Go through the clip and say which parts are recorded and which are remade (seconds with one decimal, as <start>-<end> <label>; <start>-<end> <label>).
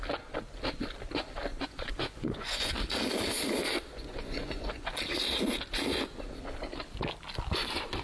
0.0-1.5 recorded; 1.5-2.7 remade; 2.7-3.9 recorded; 3.9-4.9 remade; 4.9-8.0 recorded